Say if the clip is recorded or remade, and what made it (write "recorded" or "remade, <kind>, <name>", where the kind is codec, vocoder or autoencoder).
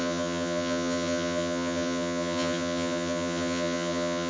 remade, vocoder, HiFi-GAN